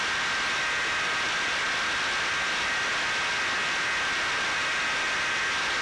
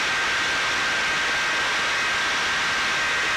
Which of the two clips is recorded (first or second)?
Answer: second